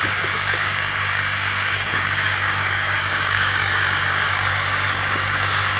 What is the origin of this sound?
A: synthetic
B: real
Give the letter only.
A